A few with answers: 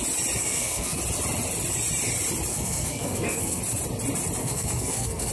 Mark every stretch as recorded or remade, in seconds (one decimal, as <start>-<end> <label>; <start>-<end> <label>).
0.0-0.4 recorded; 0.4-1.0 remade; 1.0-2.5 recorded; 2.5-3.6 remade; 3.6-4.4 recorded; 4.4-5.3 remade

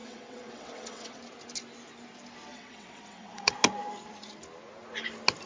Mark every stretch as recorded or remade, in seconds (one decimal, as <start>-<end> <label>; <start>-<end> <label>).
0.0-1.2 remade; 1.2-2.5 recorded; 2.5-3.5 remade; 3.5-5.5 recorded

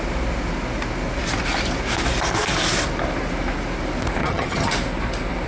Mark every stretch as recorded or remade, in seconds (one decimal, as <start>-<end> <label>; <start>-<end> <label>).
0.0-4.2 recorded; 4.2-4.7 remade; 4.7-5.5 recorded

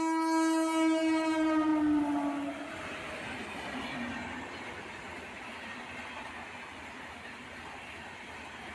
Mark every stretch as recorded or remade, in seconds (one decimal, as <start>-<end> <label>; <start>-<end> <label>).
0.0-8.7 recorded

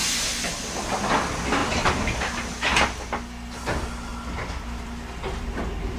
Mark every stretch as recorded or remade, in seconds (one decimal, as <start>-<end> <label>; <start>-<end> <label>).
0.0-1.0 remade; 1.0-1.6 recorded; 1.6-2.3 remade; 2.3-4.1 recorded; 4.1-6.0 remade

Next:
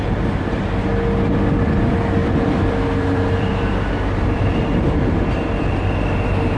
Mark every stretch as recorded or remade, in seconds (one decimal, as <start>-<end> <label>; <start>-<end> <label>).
0.0-2.2 recorded; 2.2-6.6 remade